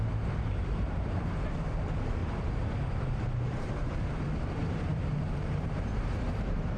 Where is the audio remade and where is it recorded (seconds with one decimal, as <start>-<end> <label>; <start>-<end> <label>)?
0.0-6.8 remade